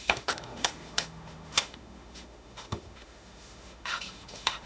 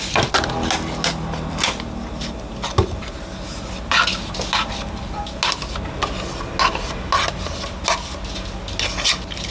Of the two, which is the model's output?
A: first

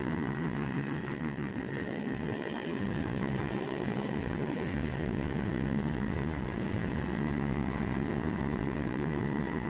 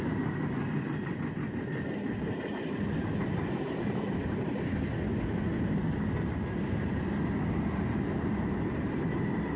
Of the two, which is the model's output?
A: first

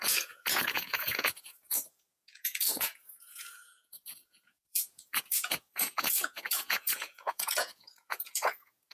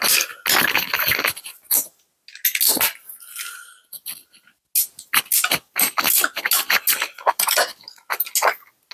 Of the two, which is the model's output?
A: first